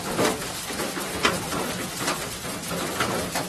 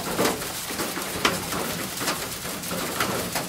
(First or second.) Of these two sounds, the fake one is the second